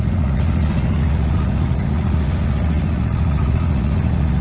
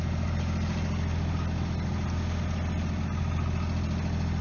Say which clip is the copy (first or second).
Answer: first